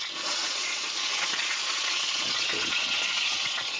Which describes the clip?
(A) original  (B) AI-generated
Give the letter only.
B